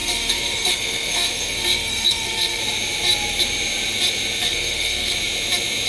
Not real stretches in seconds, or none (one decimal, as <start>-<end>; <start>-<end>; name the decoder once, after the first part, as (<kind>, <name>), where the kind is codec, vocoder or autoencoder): 0.0-2.6 (codec, SNAC); 4.4-5.1